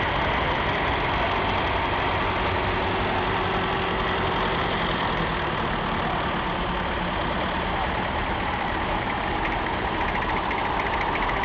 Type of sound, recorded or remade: recorded